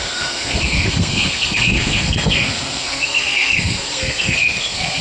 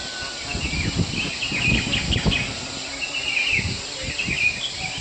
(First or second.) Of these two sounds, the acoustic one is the second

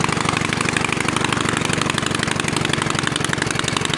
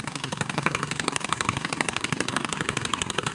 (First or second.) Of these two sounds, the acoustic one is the first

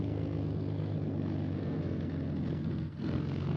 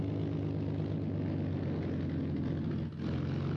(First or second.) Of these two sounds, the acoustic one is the second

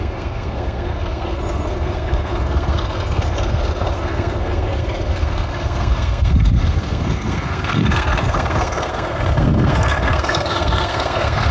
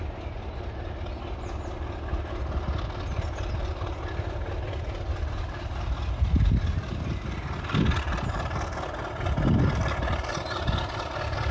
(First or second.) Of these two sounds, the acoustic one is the second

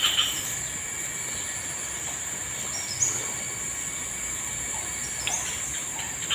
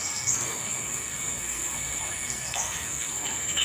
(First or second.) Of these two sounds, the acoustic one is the first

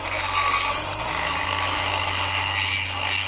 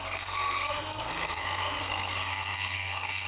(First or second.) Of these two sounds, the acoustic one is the first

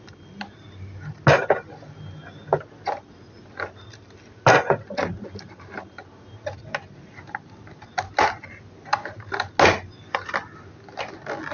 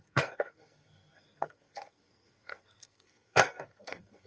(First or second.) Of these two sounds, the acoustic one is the first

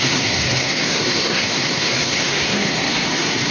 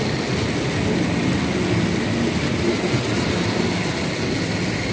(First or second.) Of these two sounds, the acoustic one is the second